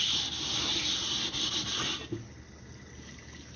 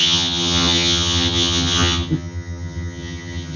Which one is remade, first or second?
second